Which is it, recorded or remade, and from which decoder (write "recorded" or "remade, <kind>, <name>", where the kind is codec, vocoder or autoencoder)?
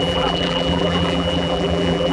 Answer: remade, vocoder, BigVGAN v2